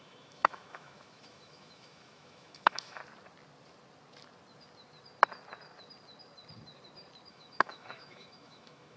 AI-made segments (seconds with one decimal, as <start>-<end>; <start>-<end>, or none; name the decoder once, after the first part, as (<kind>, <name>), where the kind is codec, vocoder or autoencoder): 0.0-3.0 (autoencoder, DAC-VAE); 7.3-9.0